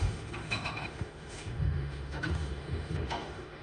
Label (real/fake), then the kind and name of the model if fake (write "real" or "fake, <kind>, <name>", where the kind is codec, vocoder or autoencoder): fake, autoencoder, DAC-VAE